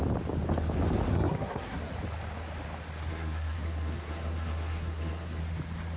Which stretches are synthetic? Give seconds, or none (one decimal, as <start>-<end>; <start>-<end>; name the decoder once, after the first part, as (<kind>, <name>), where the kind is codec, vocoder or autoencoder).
1.1-1.9 (codec, SNAC); 3.1-5.4